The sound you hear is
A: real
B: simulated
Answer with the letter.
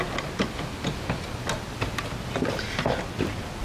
A